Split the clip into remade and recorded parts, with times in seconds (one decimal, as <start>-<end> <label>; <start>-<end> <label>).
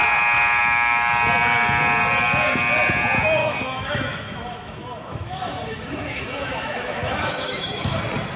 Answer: 0.0-3.4 recorded; 3.4-8.0 remade; 8.0-8.4 recorded